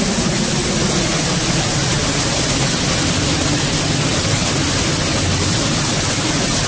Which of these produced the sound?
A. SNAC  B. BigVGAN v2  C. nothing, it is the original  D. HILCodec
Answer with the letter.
C